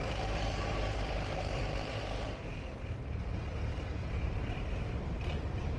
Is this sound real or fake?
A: fake